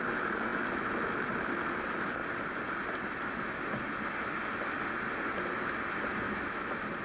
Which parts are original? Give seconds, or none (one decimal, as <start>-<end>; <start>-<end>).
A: 0.0-7.0